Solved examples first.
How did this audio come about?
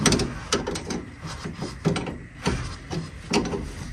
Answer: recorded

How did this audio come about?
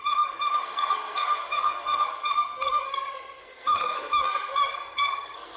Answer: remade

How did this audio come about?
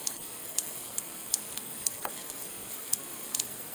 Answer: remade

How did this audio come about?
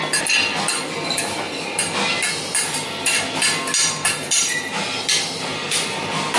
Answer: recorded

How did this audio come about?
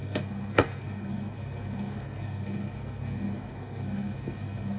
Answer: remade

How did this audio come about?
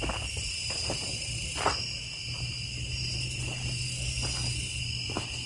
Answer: recorded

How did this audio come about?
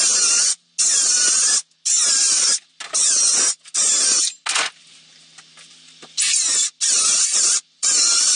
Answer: recorded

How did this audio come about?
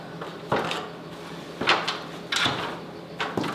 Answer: recorded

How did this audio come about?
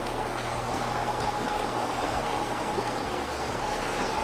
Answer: remade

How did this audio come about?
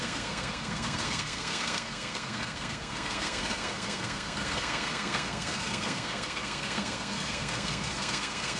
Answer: remade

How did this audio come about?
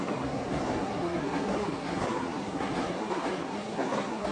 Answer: remade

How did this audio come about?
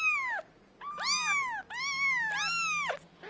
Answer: recorded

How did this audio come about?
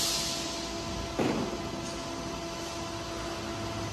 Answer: recorded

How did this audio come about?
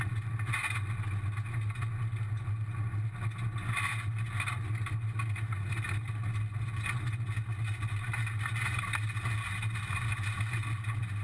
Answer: recorded